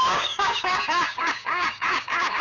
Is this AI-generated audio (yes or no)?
yes